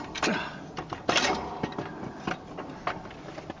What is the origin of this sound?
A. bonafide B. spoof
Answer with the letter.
A